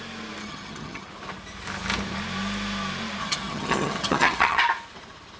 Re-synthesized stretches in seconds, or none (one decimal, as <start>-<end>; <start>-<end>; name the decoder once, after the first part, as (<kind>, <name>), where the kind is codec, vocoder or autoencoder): 0.4-1.1 (vocoder, HiFi-GAN); 3.2-4.6